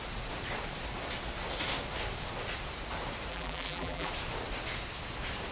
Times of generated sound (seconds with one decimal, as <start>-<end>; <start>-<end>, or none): 3.3-4.1